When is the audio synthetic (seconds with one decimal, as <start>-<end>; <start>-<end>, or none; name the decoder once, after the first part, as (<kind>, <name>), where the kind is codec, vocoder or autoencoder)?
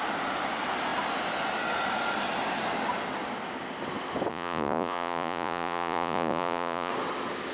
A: 4.3-6.9 (vocoder, Vocos)